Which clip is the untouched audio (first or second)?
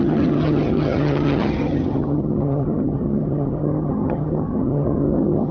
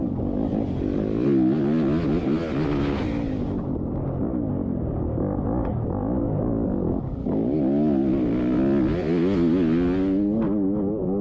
second